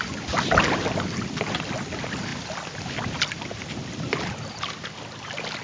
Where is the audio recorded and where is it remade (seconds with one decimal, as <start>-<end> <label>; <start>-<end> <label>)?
0.0-5.6 remade